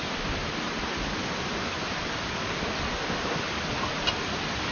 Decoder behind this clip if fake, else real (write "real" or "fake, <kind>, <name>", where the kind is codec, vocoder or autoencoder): real